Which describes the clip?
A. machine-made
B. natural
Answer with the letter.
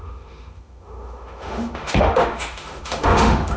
A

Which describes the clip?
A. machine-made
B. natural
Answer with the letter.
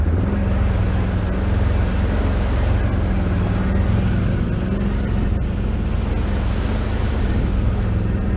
B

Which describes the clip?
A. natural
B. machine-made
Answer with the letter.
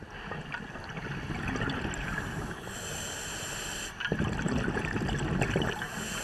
A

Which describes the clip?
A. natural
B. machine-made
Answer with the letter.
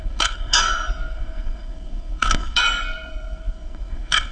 B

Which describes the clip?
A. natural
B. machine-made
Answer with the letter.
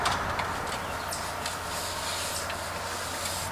A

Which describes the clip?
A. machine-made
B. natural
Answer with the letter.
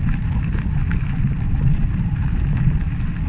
B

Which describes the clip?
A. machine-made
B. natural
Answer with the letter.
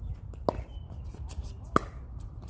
B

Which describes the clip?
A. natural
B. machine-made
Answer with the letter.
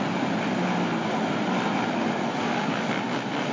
A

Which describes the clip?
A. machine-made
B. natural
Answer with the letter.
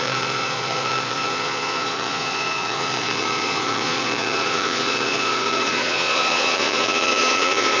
A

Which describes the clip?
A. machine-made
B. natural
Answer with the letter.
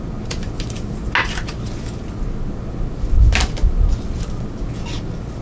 B